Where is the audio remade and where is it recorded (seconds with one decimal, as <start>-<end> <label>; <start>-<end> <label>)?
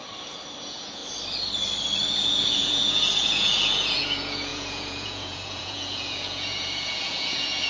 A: 0.0-0.6 recorded; 0.6-1.0 remade; 1.0-2.1 recorded; 2.1-7.7 remade